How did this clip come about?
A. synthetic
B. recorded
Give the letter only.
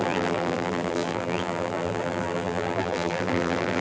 A